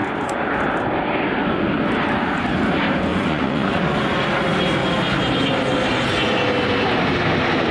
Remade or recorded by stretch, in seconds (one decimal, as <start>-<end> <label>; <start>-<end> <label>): 0.0-3.1 recorded; 3.1-4.3 remade; 4.3-7.7 recorded